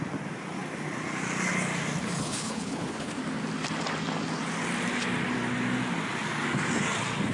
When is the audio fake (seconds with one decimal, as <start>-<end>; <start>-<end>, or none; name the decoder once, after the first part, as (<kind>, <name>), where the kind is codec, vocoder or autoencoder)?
2.0-3.2 (codec, HILCodec)